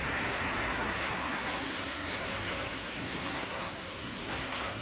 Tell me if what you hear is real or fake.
fake